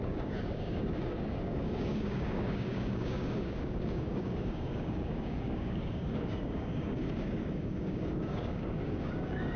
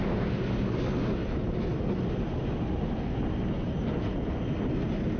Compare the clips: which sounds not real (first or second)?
first